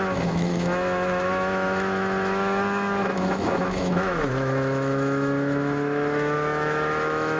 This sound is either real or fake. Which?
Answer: fake